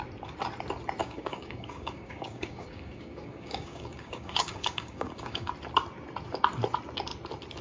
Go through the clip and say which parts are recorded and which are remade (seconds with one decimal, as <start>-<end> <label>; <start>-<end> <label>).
0.0-1.0 recorded; 1.0-5.5 remade; 5.5-7.6 recorded

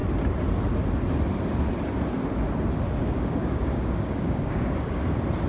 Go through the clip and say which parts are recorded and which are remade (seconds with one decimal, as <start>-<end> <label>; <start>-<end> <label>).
0.0-3.0 recorded; 3.0-5.0 remade; 5.0-5.5 recorded

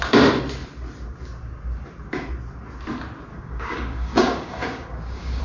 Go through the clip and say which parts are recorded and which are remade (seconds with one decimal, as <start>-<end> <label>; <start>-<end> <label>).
0.0-3.3 recorded; 3.3-5.4 remade

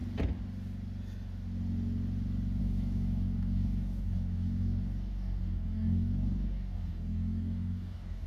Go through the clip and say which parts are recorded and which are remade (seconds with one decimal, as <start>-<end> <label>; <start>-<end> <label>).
0.0-2.6 recorded; 2.6-8.3 remade